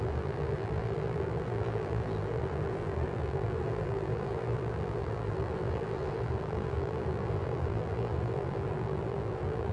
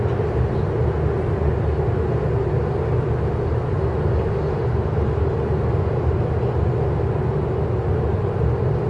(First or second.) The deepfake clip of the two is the first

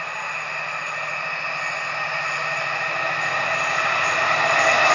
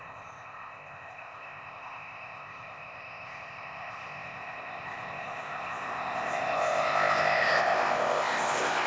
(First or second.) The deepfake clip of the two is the second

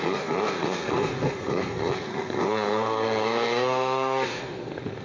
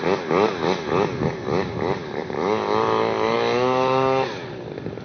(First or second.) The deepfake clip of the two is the first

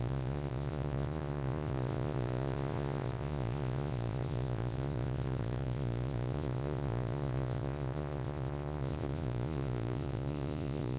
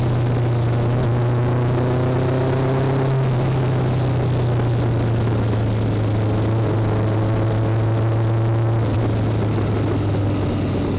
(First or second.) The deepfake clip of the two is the first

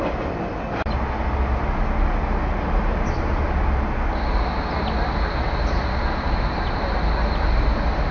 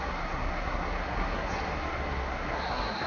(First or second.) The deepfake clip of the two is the second